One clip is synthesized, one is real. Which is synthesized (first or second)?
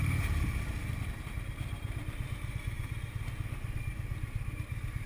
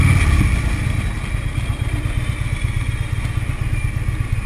first